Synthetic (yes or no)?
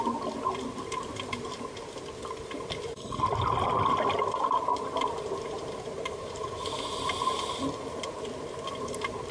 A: no